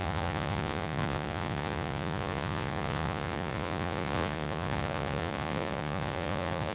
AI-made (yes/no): yes